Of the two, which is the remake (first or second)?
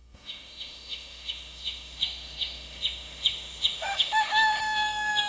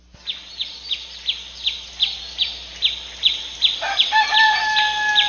first